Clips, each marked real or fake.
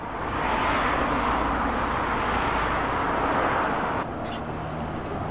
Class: real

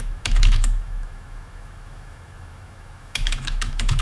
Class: fake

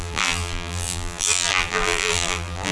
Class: fake